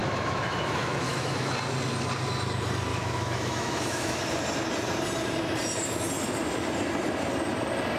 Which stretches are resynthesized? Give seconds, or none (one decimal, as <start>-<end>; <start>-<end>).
0.0-1.5; 2.9-4.2